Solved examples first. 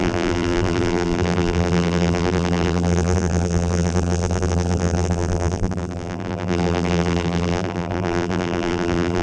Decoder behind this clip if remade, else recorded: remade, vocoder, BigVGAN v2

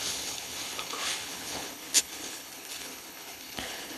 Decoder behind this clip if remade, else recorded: remade, codec, HILCodec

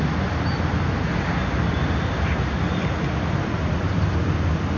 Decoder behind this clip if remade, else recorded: recorded